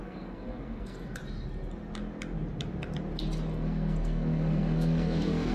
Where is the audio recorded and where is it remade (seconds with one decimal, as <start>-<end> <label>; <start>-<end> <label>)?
0.0-1.2 remade; 1.2-3.5 recorded; 3.5-5.5 remade